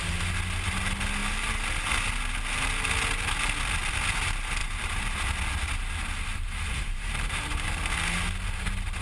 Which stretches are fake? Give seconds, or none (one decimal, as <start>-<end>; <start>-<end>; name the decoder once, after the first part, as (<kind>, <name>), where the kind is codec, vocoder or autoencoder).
4.6-5.1 (vocoder, BigVGAN v2); 6.3-7.7